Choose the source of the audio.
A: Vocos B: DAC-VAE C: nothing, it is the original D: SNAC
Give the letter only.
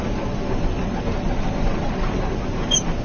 C